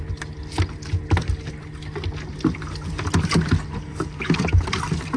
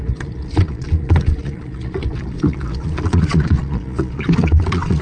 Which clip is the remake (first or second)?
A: second